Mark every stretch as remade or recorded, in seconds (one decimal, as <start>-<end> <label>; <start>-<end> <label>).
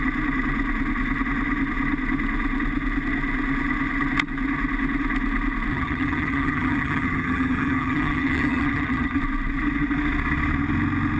0.0-5.7 recorded; 5.7-9.2 remade; 9.2-11.2 recorded